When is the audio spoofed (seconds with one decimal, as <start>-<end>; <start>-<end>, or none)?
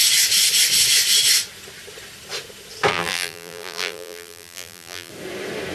2.9-5.1